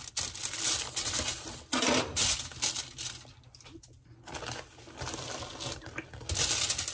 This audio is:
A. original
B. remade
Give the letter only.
A